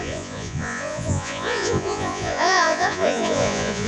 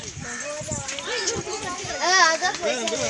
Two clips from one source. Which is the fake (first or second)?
first